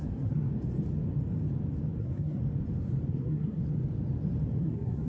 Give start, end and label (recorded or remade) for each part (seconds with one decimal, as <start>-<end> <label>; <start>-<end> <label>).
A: 0.0-0.5 remade; 0.5-2.0 recorded; 2.0-2.4 remade; 2.4-3.1 recorded; 3.1-3.6 remade; 3.6-4.6 recorded; 4.6-5.1 remade